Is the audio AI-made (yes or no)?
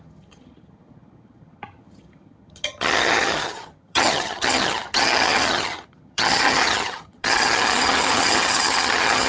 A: yes